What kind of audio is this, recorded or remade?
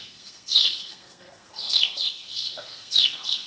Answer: remade